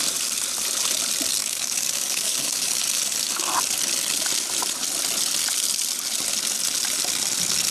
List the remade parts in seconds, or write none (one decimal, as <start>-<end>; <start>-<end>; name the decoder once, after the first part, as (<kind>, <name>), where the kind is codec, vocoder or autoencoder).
1.4-2.8 (codec, DAC)